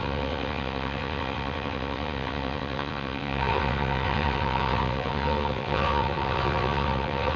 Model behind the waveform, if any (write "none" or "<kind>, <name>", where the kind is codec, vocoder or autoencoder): vocoder, WaveNeXt